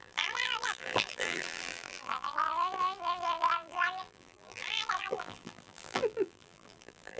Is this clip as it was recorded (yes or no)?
no